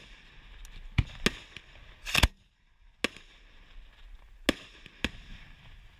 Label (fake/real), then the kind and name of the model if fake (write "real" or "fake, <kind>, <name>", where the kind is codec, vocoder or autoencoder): real